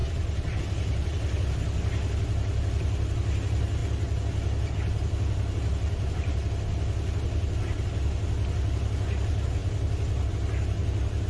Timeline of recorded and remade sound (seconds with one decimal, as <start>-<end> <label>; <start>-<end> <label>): 0.0-11.3 recorded